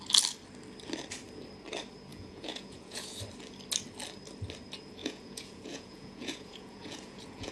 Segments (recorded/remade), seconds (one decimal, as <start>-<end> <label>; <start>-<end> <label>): 0.0-2.1 recorded; 2.1-3.2 remade; 3.2-5.0 recorded; 5.0-7.5 remade